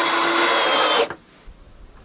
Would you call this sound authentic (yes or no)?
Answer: yes